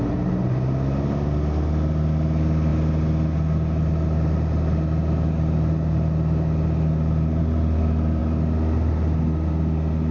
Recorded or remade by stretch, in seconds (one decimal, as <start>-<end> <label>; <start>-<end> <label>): 0.0-10.1 recorded